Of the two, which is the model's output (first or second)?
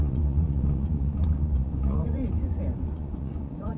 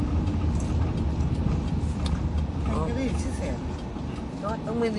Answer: first